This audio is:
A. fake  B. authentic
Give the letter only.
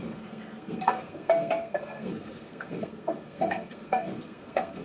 A